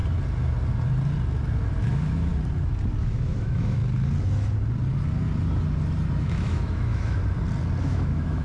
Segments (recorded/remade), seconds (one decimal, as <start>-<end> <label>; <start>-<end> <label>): 0.0-1.8 recorded; 1.8-2.3 remade; 2.3-3.0 recorded; 3.0-3.8 remade; 3.8-6.2 recorded; 6.2-7.2 remade; 7.2-7.8 recorded; 7.8-8.4 remade